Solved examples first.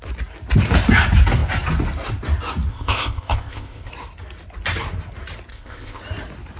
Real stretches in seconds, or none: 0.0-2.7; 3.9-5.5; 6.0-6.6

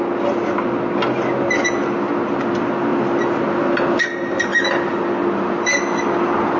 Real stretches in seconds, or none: 0.0-6.6

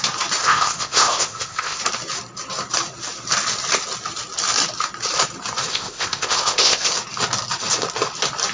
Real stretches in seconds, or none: 0.0-0.4; 1.8-5.7; 6.9-8.5

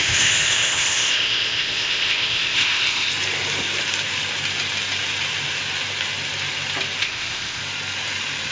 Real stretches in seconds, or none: 3.1-7.0; 7.6-8.5

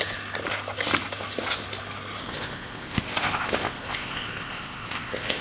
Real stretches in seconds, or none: 0.0-2.2

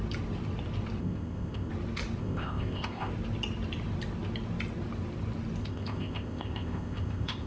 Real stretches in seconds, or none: 0.0-1.0; 1.7-2.2; 3.1-5.6

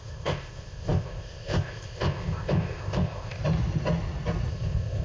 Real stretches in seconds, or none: 3.4-4.5